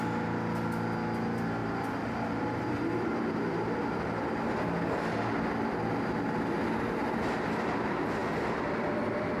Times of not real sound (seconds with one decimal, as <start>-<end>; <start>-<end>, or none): 1.6-4.3